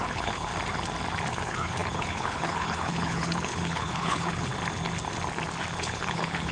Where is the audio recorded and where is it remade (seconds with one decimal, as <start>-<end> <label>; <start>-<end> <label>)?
0.0-0.5 remade; 0.5-1.3 recorded; 1.3-4.5 remade; 4.5-5.8 recorded; 5.8-6.5 remade